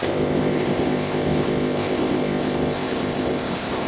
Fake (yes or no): yes